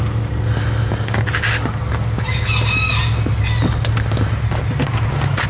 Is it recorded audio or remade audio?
recorded